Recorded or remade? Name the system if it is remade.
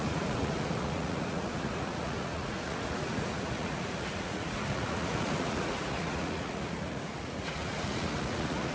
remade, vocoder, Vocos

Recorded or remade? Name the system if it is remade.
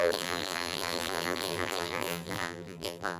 remade, vocoder, BigVGAN v2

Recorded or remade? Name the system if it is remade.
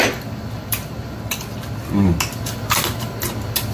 recorded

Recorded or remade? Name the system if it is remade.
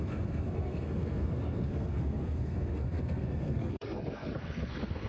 remade, codec, SNAC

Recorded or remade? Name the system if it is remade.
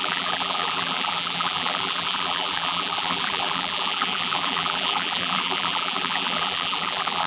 remade, vocoder, BigVGAN v2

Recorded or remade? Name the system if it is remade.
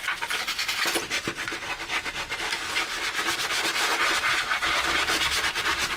recorded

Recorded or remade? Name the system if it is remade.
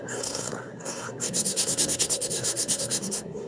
remade, codec, SNAC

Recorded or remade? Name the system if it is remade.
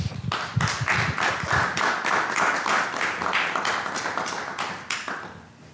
recorded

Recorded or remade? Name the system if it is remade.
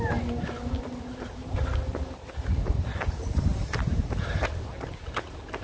recorded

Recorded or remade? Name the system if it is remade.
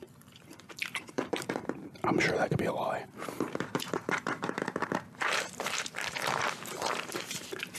remade, vocoder, BigVGAN v2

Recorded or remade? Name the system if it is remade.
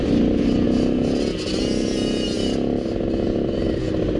recorded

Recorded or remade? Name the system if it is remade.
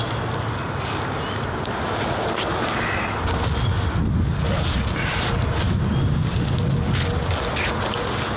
recorded